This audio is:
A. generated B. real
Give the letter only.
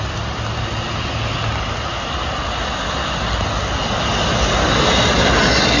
B